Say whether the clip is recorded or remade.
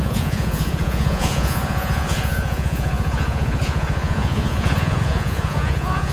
remade